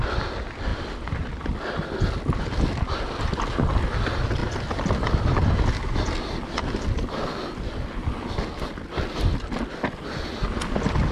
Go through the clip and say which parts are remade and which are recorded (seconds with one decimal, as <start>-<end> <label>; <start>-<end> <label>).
0.0-4.4 recorded; 4.4-5.5 remade; 5.5-11.1 recorded